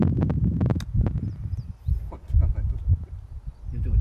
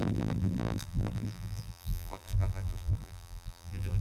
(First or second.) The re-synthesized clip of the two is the second